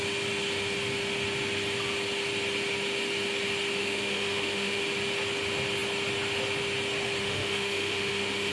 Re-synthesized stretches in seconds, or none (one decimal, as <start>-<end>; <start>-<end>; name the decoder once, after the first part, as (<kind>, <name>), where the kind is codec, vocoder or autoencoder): 3.8-4.8 (autoencoder, DAC-VAE); 7.2-8.5